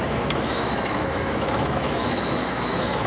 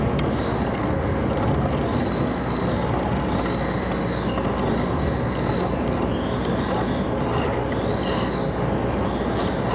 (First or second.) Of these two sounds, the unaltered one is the second